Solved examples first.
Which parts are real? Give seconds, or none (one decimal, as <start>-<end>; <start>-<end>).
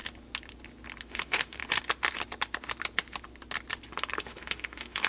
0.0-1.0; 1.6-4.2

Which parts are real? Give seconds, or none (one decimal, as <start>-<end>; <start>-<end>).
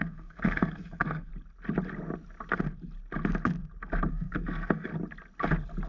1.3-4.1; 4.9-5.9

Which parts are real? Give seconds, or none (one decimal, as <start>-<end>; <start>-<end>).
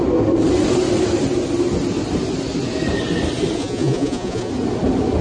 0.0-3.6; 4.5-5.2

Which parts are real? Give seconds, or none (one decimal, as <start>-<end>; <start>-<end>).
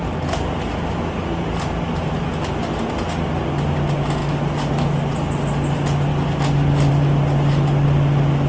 0.0-8.5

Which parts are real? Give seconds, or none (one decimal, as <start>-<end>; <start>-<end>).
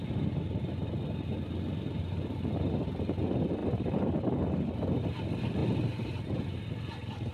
0.0-7.3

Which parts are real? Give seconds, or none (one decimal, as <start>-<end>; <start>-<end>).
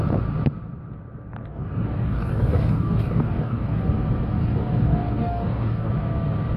0.0-1.4; 3.8-4.4; 5.9-6.6